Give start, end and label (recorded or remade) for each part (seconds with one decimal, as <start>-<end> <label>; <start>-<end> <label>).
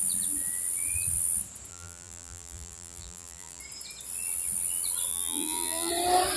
0.0-1.7 recorded; 1.7-3.6 remade; 3.6-5.1 recorded; 5.1-5.9 remade; 5.9-6.4 recorded